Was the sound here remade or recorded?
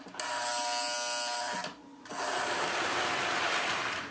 recorded